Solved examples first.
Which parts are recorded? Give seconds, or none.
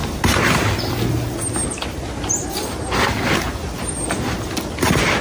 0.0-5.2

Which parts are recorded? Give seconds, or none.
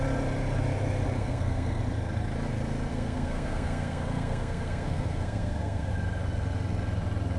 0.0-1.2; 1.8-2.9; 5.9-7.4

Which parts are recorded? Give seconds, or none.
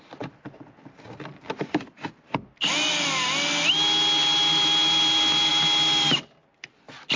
0.0-7.2